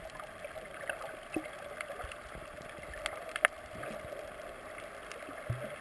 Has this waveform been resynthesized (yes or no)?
no